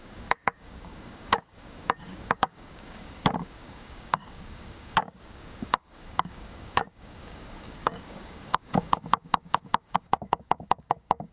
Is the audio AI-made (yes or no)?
yes